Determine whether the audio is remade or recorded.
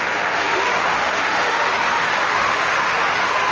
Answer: remade